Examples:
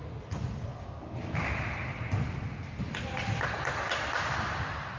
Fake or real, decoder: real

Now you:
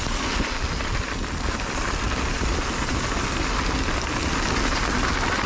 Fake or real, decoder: real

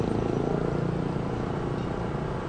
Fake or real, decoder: real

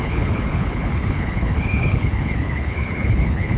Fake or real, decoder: fake, codec, HILCodec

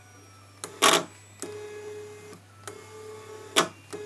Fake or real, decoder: real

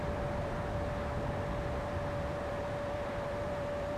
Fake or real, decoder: fake, vocoder, BigVGAN v2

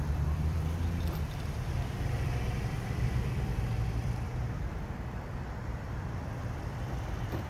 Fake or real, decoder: fake, vocoder, BigVGAN v2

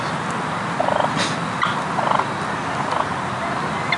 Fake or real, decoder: real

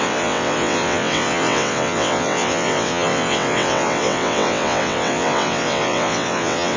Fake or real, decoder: fake, vocoder, WaveNeXt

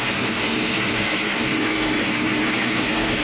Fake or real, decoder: fake, codec, SNAC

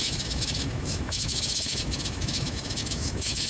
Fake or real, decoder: fake, autoencoder, DAC-VAE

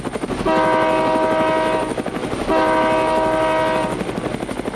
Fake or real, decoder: real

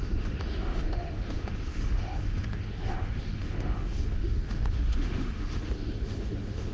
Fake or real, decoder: fake, autoencoder, DAC-VAE